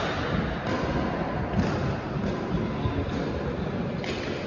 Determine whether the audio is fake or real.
real